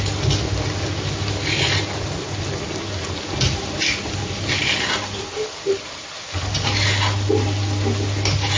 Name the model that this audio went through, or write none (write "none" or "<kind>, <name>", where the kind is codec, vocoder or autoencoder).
none